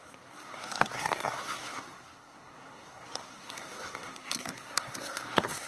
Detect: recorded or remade remade